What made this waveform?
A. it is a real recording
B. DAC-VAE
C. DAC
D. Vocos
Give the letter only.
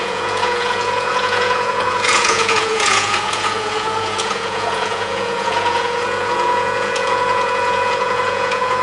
D